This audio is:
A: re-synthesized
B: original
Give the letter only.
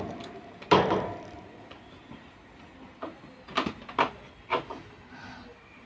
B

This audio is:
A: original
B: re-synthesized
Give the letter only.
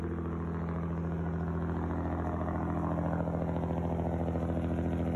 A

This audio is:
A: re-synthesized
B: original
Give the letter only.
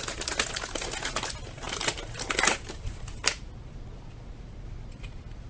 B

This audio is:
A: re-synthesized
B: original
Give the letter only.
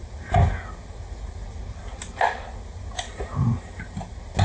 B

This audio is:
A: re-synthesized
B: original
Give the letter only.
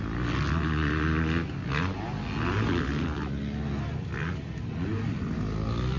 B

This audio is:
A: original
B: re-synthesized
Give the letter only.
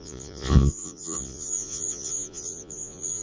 B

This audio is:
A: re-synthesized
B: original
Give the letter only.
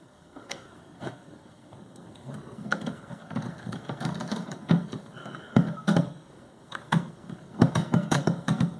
A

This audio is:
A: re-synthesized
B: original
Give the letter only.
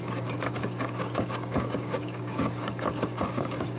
A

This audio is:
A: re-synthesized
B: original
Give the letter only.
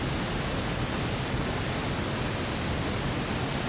B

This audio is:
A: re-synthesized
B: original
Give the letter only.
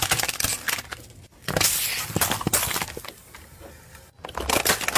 B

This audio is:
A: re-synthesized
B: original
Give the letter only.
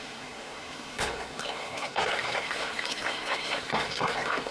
A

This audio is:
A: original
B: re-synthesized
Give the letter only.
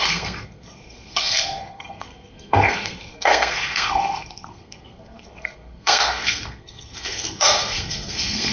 B